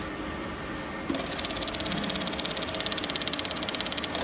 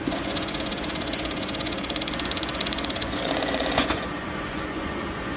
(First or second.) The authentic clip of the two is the first